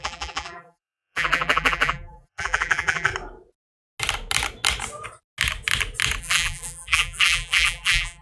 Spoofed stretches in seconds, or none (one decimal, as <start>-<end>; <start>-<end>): 0.0-3.1; 6.2-8.2